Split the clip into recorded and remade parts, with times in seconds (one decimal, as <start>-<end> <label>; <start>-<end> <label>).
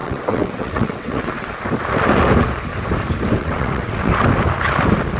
0.0-1.5 remade; 1.5-3.4 recorded; 3.4-4.1 remade; 4.1-5.2 recorded